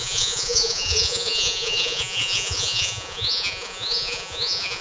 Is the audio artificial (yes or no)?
yes